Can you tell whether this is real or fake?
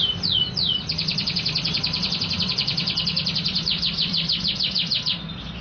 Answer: fake